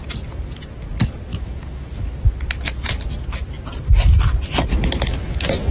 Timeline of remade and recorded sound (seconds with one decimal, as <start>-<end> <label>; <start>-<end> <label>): 0.0-1.3 recorded; 1.3-2.2 remade; 2.2-4.7 recorded; 4.7-5.7 remade